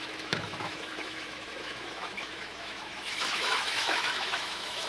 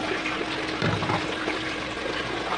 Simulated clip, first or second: first